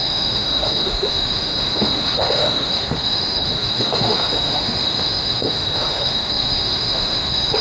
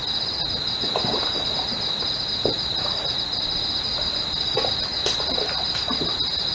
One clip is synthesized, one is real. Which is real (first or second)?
second